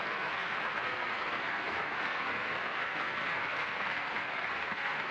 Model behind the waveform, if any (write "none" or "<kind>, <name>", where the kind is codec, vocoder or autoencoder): codec, SNAC